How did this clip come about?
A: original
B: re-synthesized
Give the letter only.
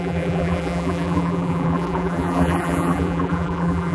B